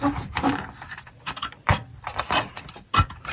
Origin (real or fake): fake